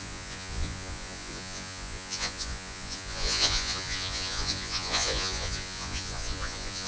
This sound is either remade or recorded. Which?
remade